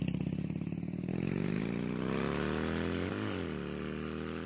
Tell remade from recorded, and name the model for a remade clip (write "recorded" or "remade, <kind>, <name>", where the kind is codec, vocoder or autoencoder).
recorded